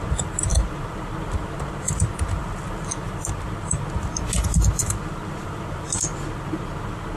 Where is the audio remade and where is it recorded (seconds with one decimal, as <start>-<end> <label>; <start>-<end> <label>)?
0.0-7.2 recorded